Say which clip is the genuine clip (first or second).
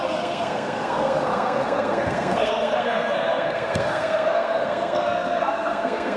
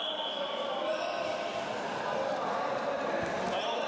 second